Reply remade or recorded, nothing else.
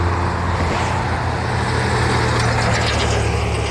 recorded